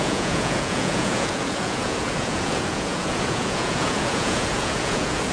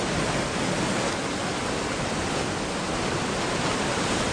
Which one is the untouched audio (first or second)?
second